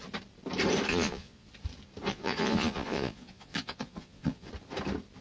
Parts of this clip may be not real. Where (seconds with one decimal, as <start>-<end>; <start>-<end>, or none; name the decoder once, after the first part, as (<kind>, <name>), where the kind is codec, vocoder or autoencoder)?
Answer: 0.9-1.5 (vocoder, Vocos); 2.1-4.5